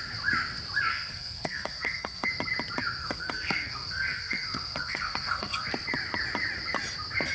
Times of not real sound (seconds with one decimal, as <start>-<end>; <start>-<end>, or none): 0.9-2.3; 3.0-5.7